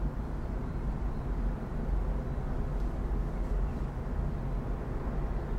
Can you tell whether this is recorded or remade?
recorded